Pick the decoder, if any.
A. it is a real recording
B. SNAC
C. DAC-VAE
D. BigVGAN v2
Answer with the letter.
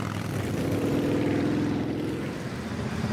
D